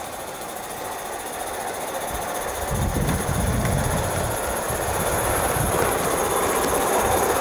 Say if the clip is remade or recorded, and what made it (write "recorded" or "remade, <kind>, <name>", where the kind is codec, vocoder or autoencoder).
recorded